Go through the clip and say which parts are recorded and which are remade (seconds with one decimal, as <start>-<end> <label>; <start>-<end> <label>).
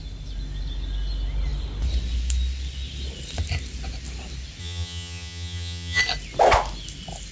0.0-4.6 recorded; 4.6-6.0 remade; 6.0-7.3 recorded